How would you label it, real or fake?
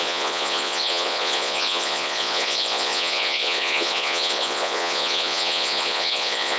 fake